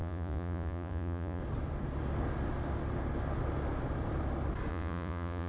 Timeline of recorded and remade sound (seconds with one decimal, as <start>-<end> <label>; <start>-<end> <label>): 0.0-1.4 remade; 1.4-4.7 recorded; 4.7-5.5 remade